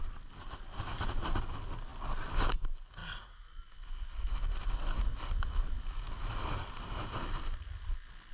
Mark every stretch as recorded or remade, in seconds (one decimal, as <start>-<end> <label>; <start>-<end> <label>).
0.0-8.3 recorded